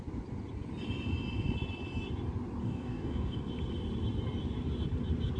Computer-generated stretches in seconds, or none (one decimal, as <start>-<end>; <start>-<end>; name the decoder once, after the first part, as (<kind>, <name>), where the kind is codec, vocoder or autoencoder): 2.6-3.4 (codec, DAC)